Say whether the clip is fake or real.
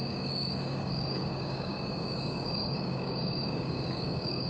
fake